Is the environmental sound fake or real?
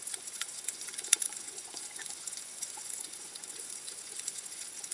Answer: fake